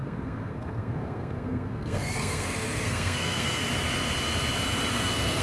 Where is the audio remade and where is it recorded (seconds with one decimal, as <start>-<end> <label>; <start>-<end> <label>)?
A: 0.0-3.6 remade; 3.6-4.9 recorded; 4.9-5.4 remade

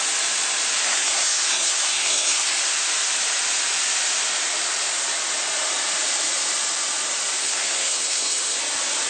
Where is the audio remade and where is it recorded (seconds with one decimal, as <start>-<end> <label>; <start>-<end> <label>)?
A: 0.0-0.8 recorded; 0.8-2.6 remade; 2.6-7.4 recorded; 7.4-8.6 remade; 8.6-9.1 recorded

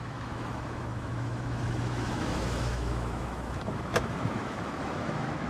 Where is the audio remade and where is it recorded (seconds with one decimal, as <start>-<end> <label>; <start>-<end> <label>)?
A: 0.0-5.5 remade

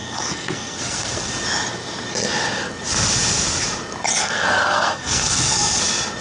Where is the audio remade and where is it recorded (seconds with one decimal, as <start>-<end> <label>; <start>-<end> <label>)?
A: 0.0-1.3 remade; 1.3-4.2 recorded; 4.2-5.8 remade; 5.8-6.2 recorded

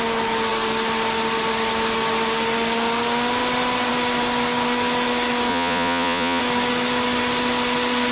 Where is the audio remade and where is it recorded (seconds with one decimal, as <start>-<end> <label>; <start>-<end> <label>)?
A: 0.0-5.5 recorded; 5.5-6.4 remade; 6.4-8.1 recorded